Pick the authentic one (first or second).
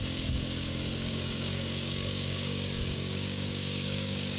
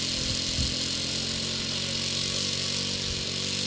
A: second